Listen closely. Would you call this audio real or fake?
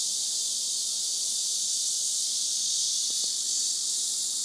real